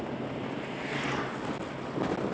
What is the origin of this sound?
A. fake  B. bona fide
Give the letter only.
B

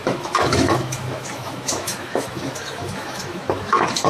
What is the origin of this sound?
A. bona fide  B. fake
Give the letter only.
B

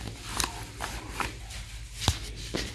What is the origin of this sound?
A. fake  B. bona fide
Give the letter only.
B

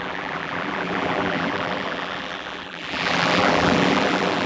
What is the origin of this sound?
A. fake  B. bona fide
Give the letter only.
A